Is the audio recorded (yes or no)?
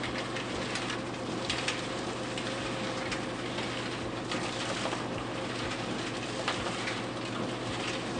yes